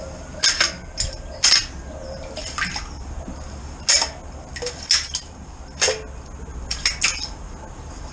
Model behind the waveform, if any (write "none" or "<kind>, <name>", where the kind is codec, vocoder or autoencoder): none